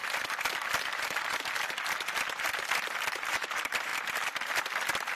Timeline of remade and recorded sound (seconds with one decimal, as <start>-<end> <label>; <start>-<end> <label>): 0.0-3.1 recorded; 3.1-3.9 remade; 3.9-5.2 recorded